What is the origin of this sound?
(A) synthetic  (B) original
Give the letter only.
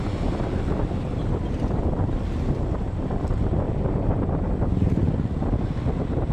A